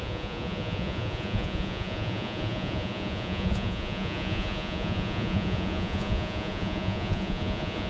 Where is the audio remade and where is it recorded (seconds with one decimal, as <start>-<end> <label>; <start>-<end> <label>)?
0.0-7.9 remade